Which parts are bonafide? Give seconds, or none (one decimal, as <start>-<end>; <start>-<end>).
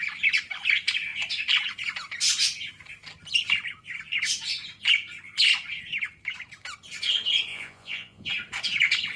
0.0-7.5; 8.3-9.2